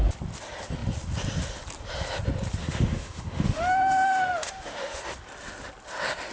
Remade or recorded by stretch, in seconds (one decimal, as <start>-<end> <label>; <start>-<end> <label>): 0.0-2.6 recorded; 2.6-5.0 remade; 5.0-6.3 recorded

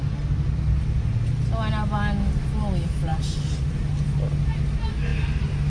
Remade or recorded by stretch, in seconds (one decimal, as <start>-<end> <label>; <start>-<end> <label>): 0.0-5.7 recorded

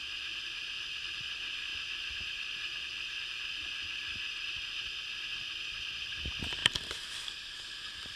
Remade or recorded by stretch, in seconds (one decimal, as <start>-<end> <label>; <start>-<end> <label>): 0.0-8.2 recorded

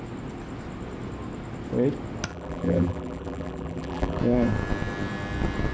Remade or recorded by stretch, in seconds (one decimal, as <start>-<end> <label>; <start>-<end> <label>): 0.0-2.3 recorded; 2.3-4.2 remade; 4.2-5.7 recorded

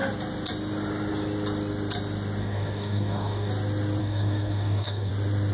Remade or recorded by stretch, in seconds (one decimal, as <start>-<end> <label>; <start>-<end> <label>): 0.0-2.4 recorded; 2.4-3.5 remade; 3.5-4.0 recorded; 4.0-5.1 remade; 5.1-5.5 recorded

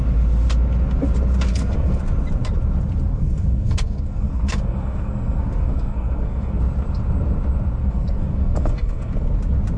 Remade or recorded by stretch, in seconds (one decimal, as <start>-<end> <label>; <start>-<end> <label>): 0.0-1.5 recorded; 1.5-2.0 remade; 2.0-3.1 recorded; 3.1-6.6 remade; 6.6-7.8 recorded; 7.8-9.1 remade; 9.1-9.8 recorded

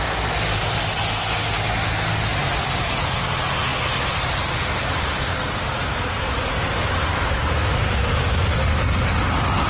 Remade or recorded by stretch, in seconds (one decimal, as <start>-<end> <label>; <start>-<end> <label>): 0.0-9.7 recorded